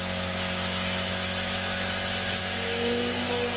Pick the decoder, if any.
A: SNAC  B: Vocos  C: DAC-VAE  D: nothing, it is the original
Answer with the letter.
C